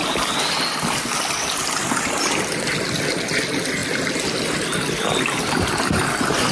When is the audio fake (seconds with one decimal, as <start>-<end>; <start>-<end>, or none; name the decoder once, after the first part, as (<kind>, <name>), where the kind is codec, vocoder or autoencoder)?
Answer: none